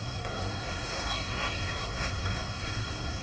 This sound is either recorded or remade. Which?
remade